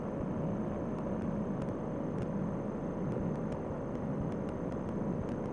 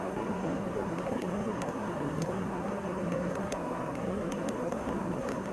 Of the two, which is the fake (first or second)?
second